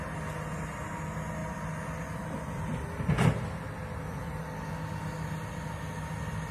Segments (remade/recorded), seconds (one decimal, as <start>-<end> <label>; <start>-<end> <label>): 0.0-6.5 recorded